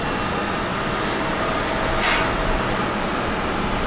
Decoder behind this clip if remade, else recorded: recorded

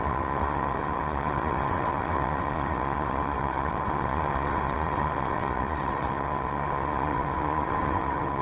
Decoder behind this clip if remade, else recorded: remade, vocoder, WaveNeXt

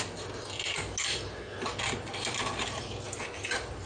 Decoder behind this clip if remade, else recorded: recorded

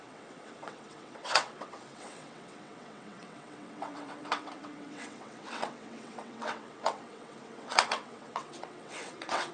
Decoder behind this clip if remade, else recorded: remade, vocoder, WaveNeXt